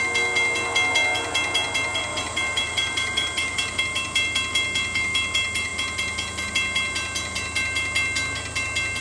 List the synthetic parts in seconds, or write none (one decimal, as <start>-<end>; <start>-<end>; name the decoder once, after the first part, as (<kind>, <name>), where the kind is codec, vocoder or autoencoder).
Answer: 2.1-3.8 (vocoder, BigVGAN v2)